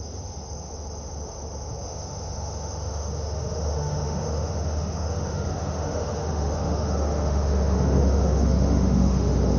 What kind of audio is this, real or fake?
fake